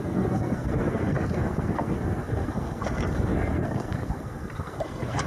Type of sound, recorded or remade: remade